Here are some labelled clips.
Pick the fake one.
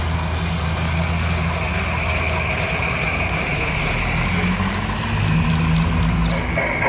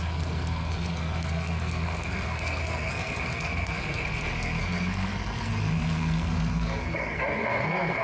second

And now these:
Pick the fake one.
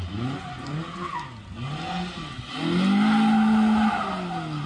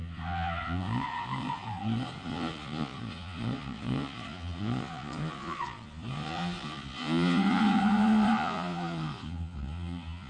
second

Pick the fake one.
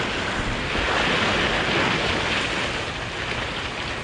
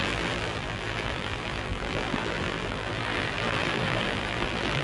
second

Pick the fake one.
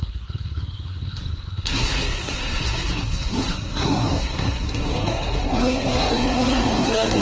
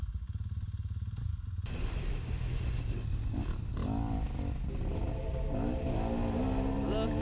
first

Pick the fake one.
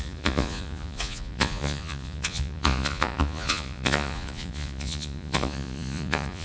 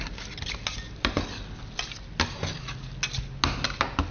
first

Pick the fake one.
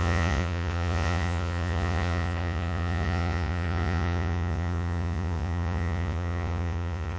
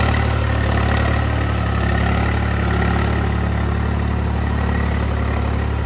first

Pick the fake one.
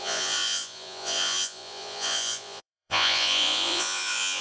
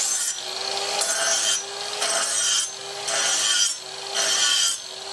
first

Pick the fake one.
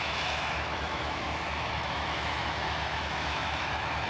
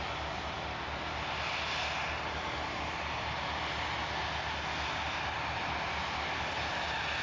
first